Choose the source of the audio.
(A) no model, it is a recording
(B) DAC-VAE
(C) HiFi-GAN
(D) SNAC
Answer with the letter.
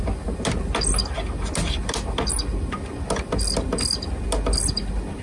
A